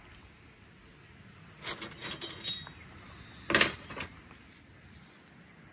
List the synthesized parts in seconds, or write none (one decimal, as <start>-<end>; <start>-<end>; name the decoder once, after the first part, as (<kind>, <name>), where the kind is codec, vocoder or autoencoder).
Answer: none